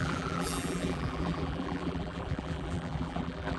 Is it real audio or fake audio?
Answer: fake